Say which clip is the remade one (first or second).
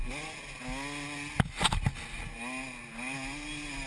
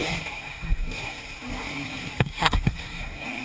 second